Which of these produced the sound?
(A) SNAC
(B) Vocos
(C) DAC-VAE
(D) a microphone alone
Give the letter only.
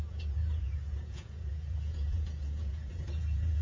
B